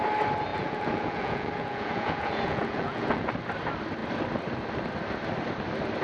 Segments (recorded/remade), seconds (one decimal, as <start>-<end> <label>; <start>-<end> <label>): 0.0-0.5 recorded; 0.5-3.3 remade; 3.3-6.0 recorded